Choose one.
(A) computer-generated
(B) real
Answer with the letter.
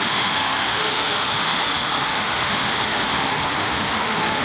A